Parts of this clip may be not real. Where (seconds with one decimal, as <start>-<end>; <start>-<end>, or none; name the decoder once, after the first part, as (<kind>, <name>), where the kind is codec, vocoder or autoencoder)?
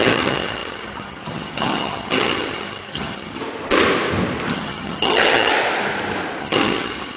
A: 0.0-3.4 (vocoder, HiFi-GAN); 4.5-5.5; 6.4-7.2